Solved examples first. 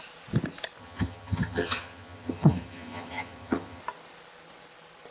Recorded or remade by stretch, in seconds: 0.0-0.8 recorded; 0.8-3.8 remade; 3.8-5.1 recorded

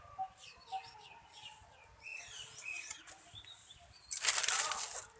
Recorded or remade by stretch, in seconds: 0.0-2.1 recorded; 2.1-4.7 remade; 4.7-5.2 recorded

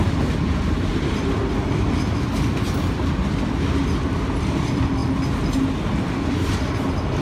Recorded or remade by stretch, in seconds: 0.0-0.9 remade; 0.9-4.4 recorded; 4.4-5.0 remade; 5.0-6.0 recorded; 6.0-7.2 remade